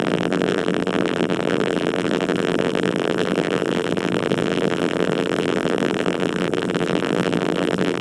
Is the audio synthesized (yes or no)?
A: yes